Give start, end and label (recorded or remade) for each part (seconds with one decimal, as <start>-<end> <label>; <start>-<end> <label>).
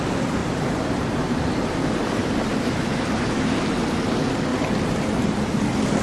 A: 0.0-0.4 recorded; 0.4-3.7 remade; 3.7-4.5 recorded; 4.5-5.6 remade; 5.6-6.0 recorded